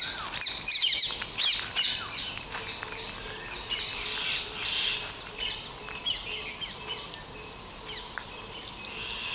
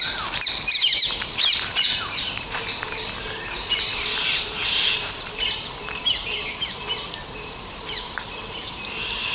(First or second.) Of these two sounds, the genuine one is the first